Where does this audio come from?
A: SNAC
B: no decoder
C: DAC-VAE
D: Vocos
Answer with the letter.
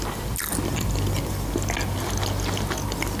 B